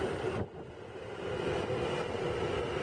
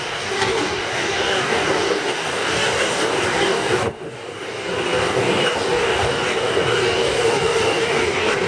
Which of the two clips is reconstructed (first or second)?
second